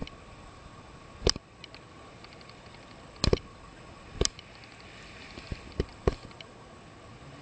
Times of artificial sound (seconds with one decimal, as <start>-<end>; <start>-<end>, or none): none